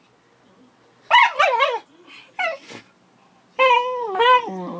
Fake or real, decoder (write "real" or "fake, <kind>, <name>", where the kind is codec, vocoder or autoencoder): real